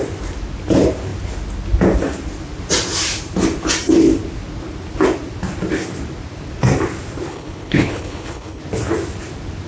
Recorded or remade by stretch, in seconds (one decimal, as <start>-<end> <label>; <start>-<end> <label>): 0.0-7.3 recorded; 7.3-8.6 remade; 8.6-9.7 recorded